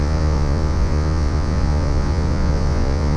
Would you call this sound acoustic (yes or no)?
no